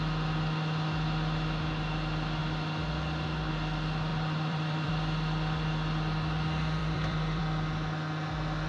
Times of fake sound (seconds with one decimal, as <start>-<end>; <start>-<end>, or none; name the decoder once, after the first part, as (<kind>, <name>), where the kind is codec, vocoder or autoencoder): 4.1-4.9 (vocoder, BigVGAN v2); 6.8-7.4